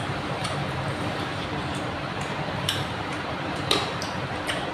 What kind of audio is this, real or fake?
fake